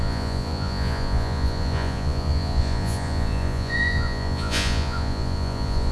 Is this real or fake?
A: fake